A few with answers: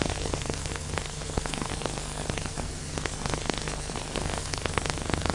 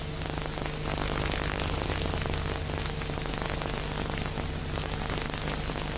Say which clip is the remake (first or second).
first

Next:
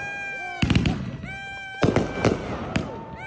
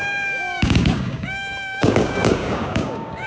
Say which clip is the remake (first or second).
second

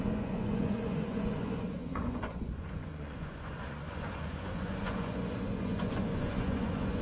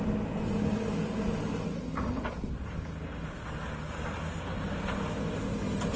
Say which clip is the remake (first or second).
first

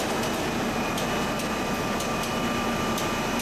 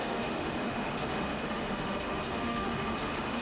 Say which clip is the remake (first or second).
second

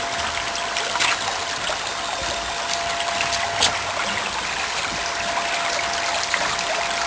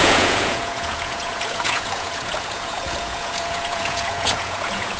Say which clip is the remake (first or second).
second